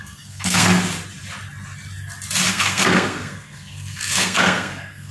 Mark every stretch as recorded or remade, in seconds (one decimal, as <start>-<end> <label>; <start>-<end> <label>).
0.0-0.8 remade; 0.8-2.5 recorded; 2.5-5.1 remade

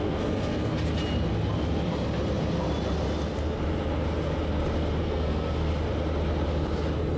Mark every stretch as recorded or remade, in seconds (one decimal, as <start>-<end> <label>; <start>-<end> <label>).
0.0-0.7 remade; 0.7-5.0 recorded; 5.0-5.7 remade; 5.7-7.2 recorded

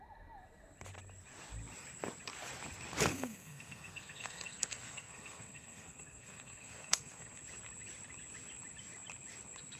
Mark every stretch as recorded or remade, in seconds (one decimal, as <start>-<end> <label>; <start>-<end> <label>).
0.0-3.1 recorded; 3.1-7.4 remade; 7.4-9.8 recorded

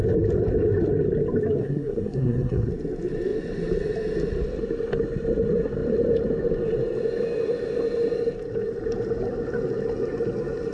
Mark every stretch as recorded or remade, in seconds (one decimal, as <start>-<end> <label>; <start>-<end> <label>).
0.0-1.6 recorded; 1.6-2.7 remade; 2.7-10.7 recorded

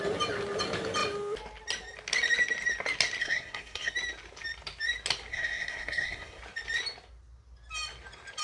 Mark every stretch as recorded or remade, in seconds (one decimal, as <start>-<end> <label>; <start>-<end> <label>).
0.0-3.2 recorded; 3.2-3.9 remade; 3.9-5.3 recorded; 5.3-6.4 remade; 6.4-8.4 recorded

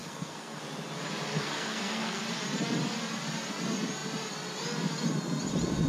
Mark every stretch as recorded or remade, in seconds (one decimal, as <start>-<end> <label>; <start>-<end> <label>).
0.0-0.6 remade; 0.6-1.3 recorded; 1.3-2.2 remade; 2.2-5.9 recorded

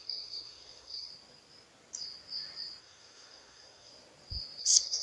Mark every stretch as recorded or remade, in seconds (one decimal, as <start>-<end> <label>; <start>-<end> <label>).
0.0-1.1 remade; 1.1-2.8 recorded; 2.8-3.9 remade; 3.9-4.6 recorded; 4.6-5.0 remade

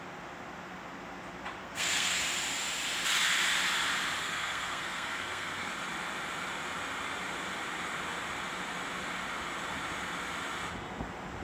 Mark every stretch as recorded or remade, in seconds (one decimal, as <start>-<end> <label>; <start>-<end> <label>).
0.0-1.6 recorded; 1.6-2.2 remade; 2.2-4.2 recorded; 4.2-5.7 remade; 5.7-11.4 recorded